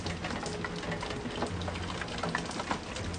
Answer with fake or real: real